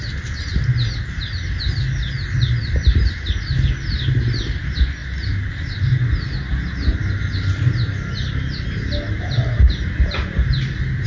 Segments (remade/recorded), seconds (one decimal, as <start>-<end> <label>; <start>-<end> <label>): 0.0-11.1 recorded